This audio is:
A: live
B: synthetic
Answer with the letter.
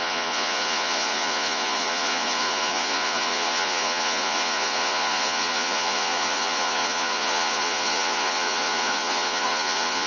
B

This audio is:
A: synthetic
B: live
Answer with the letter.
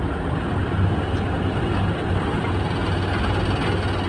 B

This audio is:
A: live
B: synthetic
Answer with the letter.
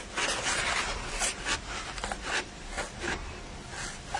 A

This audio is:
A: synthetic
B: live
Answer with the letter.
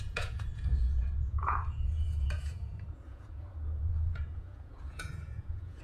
A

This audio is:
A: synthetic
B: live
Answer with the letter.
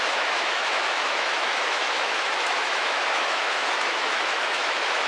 A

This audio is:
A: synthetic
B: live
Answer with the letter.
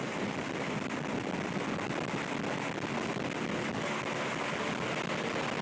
B